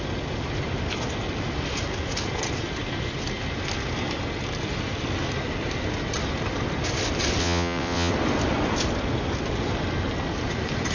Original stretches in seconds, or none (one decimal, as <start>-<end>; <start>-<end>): 0.0-7.4; 8.1-10.9